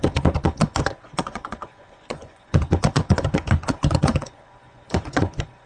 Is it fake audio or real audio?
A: fake